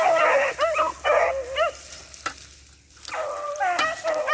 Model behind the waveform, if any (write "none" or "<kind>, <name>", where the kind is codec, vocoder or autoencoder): none